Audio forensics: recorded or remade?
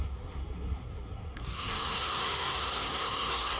remade